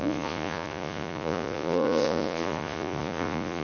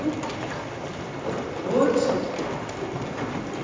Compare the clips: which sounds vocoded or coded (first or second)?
first